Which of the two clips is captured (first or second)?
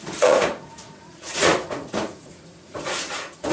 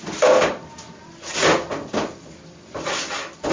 second